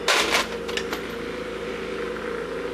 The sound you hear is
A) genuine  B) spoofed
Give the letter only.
A